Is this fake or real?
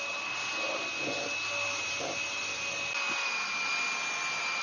real